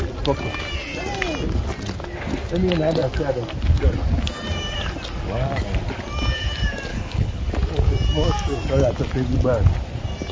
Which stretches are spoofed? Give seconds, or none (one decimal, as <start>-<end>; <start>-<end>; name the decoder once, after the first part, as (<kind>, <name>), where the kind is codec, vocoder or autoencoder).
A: 6.9-7.5 (codec, HILCodec)

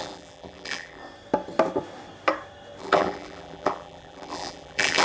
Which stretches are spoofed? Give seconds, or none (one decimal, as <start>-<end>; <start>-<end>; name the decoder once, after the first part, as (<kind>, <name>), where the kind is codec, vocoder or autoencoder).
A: 0.0-1.0 (vocoder, BigVGAN v2); 2.8-5.0

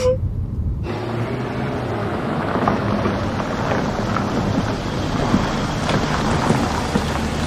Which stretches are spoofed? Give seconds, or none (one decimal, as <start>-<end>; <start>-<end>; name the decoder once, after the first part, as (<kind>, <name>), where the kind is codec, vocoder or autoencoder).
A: 2.0-2.9 (autoencoder, DAC-VAE)